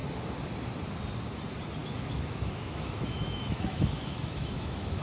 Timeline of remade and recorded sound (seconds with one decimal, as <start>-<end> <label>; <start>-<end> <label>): 0.0-1.8 recorded; 1.8-5.0 remade

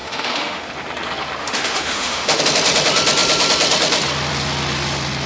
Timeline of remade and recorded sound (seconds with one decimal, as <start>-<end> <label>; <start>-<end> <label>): 0.0-0.7 remade; 0.7-1.4 recorded; 1.4-2.4 remade; 2.4-5.3 recorded

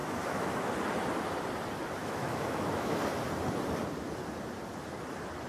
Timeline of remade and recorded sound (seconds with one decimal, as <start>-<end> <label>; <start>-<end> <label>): 0.0-0.7 remade; 0.7-2.0 recorded; 2.0-3.0 remade; 3.0-5.5 recorded